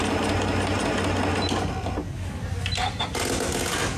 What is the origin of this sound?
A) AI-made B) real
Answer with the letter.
B